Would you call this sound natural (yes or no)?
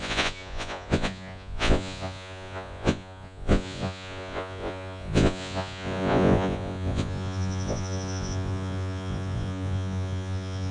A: no